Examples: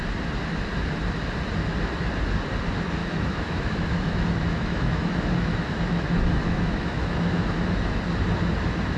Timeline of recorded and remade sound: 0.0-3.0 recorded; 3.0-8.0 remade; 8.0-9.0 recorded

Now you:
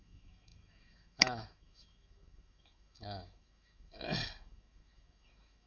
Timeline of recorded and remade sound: 0.0-5.7 remade

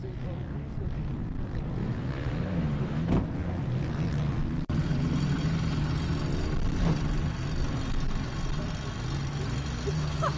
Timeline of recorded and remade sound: 0.0-1.8 recorded; 1.8-3.1 remade; 3.1-10.4 recorded

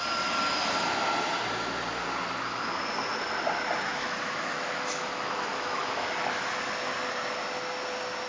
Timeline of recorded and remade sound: 0.0-3.9 recorded; 3.9-6.5 remade; 6.5-8.3 recorded

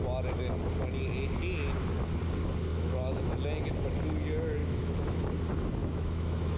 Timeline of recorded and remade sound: 0.0-2.7 recorded; 2.7-3.2 remade; 3.2-4.6 recorded; 4.6-5.2 remade; 5.2-5.8 recorded; 5.8-6.6 remade

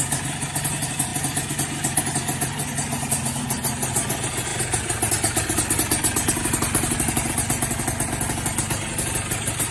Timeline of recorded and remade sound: 0.0-9.7 recorded

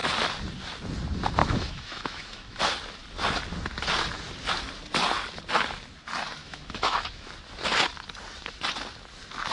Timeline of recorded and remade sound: 0.0-1.4 recorded; 1.4-2.6 remade; 2.6-6.4 recorded; 6.4-7.3 remade; 7.3-9.5 recorded

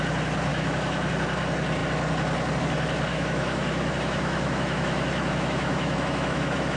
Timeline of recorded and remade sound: 0.0-0.5 recorded; 0.5-1.1 remade; 1.1-3.1 recorded; 3.1-6.8 remade